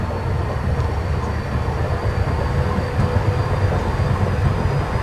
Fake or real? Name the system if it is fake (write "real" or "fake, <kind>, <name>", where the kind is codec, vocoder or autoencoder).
real